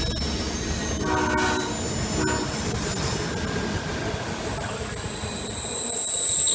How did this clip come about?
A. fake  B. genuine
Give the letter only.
B